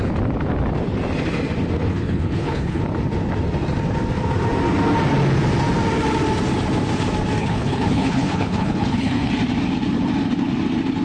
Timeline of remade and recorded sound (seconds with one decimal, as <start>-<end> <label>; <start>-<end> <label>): 0.0-1.9 recorded; 1.9-2.8 remade; 2.8-7.4 recorded; 7.4-9.3 remade; 9.3-11.0 recorded